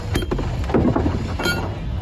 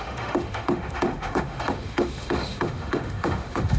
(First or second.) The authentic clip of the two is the first